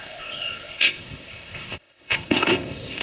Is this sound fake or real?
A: fake